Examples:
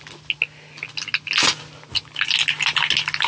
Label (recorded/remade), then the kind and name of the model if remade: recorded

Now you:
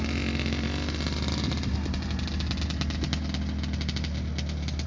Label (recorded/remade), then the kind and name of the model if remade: recorded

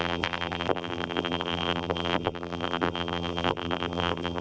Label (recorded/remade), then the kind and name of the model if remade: remade, vocoder, BigVGAN v2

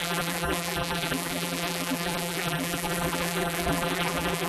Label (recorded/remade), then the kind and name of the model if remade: remade, vocoder, BigVGAN v2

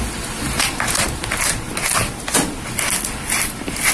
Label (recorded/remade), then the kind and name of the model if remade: recorded